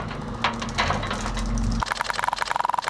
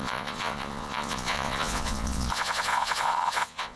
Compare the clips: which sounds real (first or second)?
first